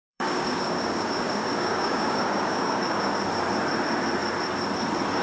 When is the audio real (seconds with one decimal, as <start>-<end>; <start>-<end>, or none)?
3.1-5.2